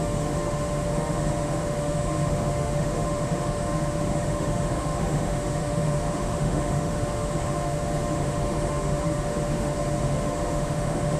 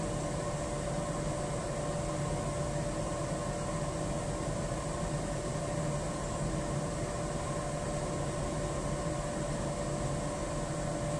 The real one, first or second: second